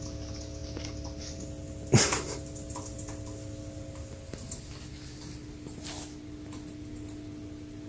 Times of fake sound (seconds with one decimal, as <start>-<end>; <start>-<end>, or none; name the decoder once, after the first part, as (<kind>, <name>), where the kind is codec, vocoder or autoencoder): none